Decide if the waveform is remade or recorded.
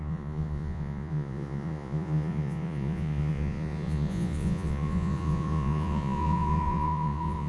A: remade